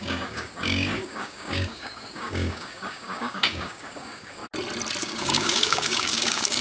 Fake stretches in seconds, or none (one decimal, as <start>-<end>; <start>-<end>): 0.0-4.4; 5.0-6.6